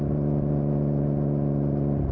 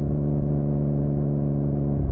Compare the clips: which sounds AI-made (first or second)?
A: second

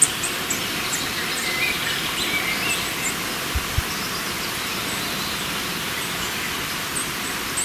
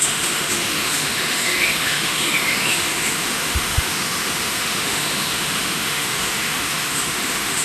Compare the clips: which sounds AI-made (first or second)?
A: second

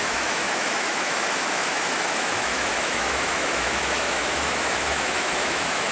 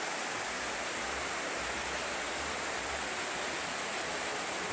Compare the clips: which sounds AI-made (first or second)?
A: first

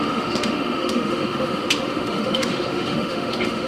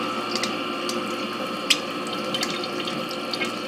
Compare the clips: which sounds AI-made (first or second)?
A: first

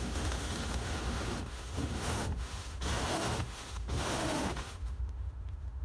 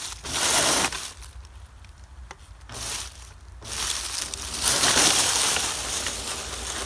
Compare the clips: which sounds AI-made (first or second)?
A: first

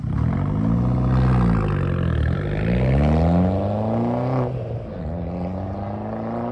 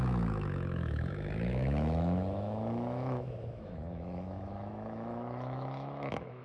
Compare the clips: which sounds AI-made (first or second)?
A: second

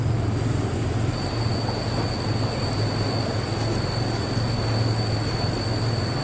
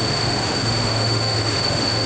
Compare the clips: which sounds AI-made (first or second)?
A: second